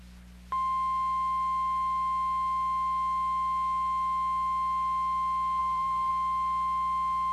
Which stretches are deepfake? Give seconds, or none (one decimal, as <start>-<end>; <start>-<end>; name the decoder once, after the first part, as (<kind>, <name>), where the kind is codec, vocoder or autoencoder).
5.6-6.1 (vocoder, BigVGAN v2)